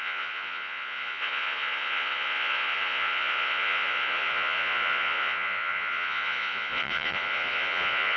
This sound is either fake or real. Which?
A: fake